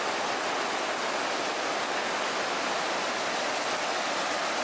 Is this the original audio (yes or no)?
yes